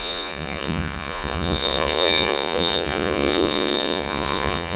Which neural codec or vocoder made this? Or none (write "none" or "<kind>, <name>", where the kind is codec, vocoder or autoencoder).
vocoder, Vocos